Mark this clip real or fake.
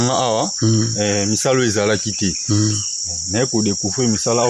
real